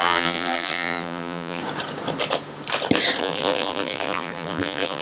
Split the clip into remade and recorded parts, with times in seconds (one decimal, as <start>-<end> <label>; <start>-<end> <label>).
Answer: 0.0-1.6 remade; 1.6-3.2 recorded; 3.2-5.0 remade